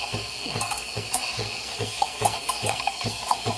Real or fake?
fake